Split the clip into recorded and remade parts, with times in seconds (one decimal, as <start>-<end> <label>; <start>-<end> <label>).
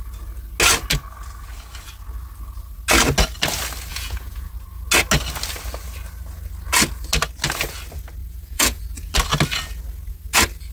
0.0-3.9 recorded; 3.9-4.5 remade; 4.5-8.2 recorded; 8.2-8.8 remade; 8.8-10.7 recorded